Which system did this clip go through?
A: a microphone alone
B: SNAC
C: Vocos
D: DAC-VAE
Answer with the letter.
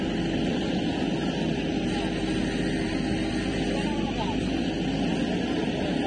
A